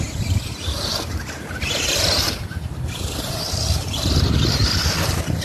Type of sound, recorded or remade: remade